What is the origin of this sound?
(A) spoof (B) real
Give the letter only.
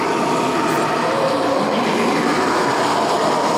B